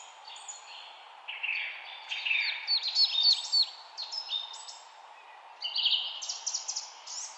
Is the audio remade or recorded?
recorded